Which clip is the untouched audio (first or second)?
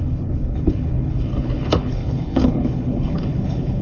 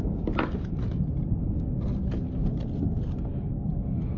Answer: second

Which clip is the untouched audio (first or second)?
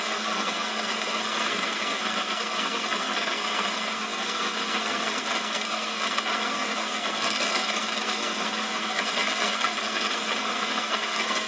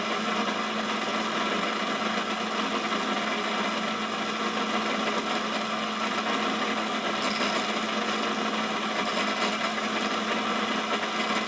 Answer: second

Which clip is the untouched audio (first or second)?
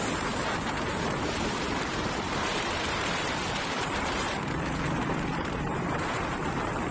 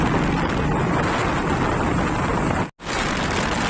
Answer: second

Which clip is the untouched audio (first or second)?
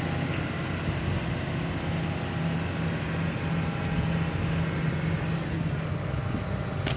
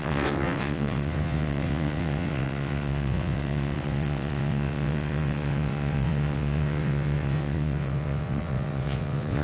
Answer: first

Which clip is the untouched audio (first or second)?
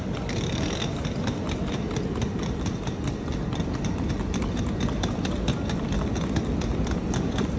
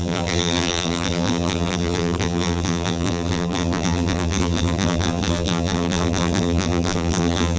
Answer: first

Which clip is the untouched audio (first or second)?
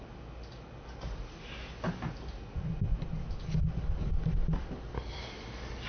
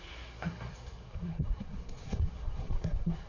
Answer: first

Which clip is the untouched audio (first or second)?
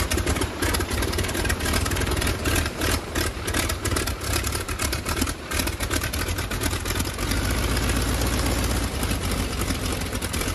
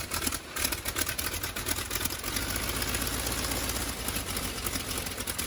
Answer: second